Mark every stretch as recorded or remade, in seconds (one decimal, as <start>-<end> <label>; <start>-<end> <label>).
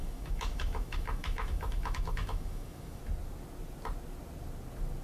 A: 0.0-3.0 remade; 3.0-5.0 recorded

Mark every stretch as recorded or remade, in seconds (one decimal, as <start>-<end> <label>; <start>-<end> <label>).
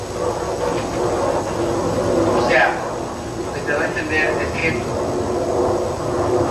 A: 0.0-6.5 recorded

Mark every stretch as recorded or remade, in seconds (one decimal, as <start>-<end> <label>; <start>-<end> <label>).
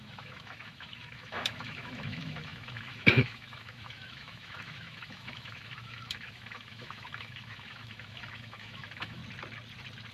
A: 0.0-9.2 remade; 9.2-10.1 recorded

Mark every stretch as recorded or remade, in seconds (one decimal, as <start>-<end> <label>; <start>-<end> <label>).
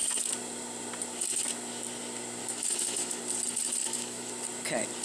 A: 0.0-2.4 recorded; 2.4-3.2 remade; 3.2-3.8 recorded; 3.8-4.3 remade; 4.3-5.0 recorded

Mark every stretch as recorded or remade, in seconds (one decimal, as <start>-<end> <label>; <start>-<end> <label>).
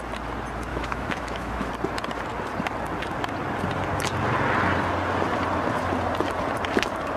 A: 0.0-0.7 recorded; 0.7-1.7 remade; 1.7-7.2 recorded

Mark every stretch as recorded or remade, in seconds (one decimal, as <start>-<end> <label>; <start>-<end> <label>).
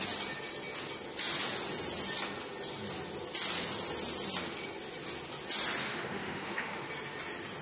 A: 0.0-5.8 recorded; 5.8-6.9 remade; 6.9-7.6 recorded